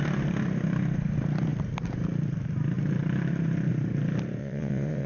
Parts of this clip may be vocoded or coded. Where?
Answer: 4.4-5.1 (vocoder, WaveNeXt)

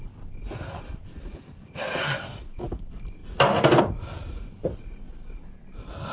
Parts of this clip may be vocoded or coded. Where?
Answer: none

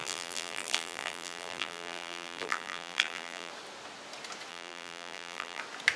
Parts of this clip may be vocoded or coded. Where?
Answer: 0.0-3.5 (vocoder, BigVGAN v2); 4.5-5.6

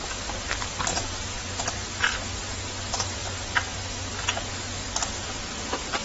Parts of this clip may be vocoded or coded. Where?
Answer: 0.9-1.6 (vocoder, Vocos)